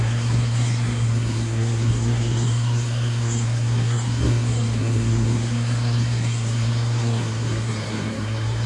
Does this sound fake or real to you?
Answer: fake